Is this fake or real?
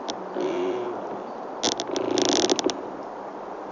real